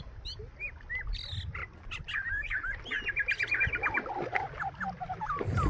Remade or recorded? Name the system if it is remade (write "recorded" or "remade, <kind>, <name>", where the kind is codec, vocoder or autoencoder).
recorded